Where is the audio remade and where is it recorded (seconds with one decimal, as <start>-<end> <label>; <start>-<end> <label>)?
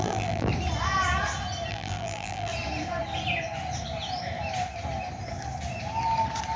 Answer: 0.0-0.5 remade; 0.5-1.7 recorded; 1.7-2.5 remade; 2.5-6.6 recorded